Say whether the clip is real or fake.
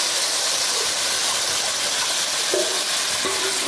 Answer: real